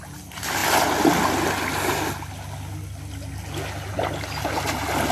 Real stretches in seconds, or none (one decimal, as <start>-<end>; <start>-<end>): 0.0-5.1